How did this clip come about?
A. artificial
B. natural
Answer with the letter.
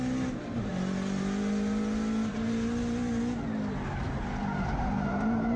B